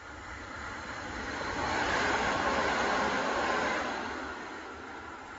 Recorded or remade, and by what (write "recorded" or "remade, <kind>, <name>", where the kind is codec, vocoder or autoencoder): remade, vocoder, BigVGAN v2